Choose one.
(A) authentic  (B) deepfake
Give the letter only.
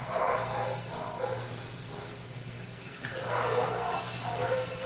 B